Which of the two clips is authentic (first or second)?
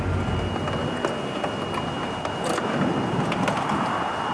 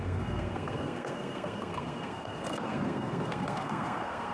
first